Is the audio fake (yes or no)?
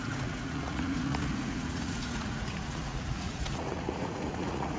yes